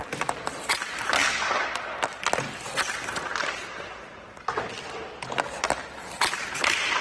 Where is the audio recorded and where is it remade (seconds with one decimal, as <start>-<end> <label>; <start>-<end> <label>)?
0.0-7.0 recorded